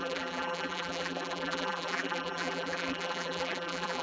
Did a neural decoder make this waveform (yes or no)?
yes